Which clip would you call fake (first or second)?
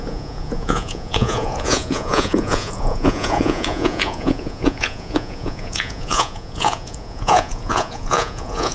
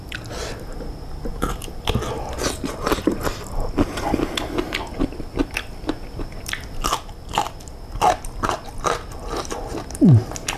first